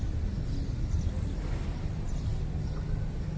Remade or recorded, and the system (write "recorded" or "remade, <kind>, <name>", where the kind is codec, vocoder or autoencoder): recorded